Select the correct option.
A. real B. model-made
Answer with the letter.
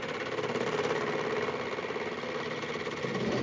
A